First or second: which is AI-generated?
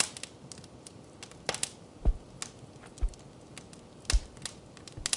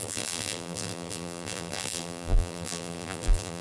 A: second